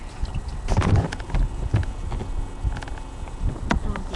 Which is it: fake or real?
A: real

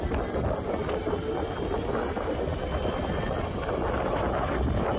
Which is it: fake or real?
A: real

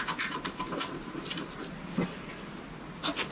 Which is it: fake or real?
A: real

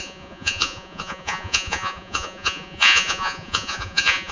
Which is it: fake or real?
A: fake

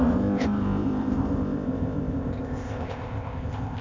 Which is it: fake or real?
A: fake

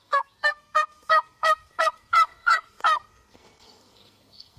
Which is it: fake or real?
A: fake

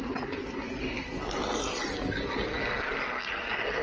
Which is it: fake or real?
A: real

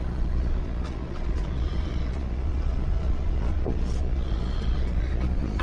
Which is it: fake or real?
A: fake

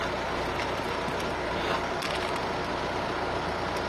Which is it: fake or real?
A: real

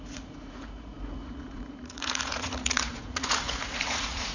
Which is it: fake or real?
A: fake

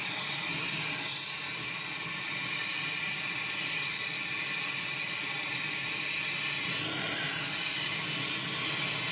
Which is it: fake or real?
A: real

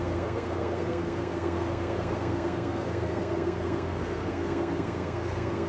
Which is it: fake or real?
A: fake